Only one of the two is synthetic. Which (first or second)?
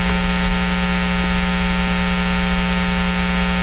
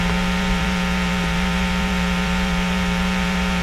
second